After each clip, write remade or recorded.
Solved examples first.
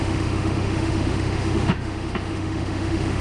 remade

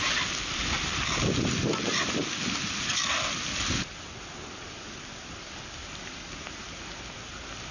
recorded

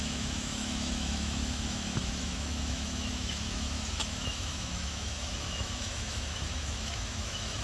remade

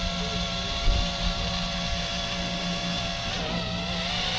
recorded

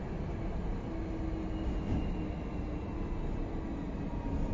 recorded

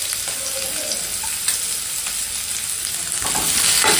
recorded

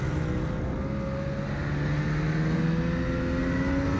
recorded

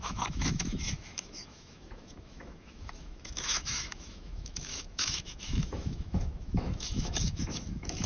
remade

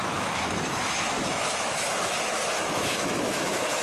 remade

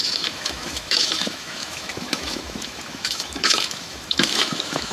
remade